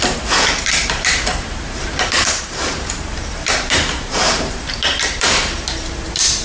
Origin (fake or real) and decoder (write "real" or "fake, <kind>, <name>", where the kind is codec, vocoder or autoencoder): fake, vocoder, BigVGAN v2